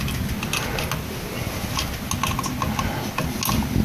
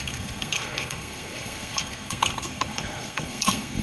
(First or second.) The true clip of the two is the first